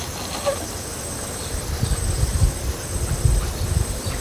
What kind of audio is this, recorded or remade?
recorded